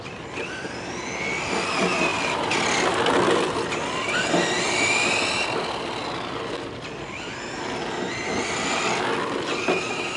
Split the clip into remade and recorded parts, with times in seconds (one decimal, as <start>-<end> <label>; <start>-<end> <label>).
0.0-10.2 recorded